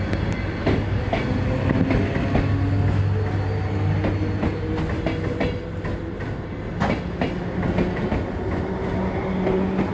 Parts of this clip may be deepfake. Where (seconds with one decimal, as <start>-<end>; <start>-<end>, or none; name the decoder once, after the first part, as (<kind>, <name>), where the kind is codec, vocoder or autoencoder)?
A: 0.6-1.2 (codec, DAC)